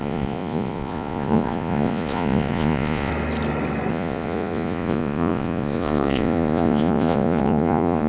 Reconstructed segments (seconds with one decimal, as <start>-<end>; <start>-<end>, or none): 0.0-3.1; 3.9-8.1